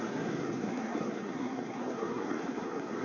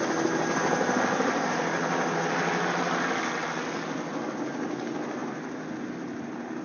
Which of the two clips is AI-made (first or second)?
first